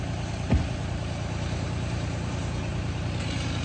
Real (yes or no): no